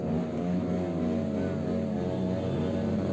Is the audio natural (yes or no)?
yes